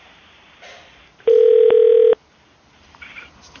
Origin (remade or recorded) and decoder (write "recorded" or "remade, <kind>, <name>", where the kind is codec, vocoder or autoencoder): remade, vocoder, BigVGAN v2